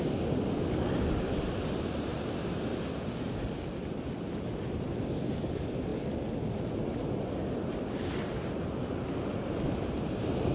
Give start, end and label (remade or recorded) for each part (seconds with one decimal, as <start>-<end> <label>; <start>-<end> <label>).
0.0-10.5 recorded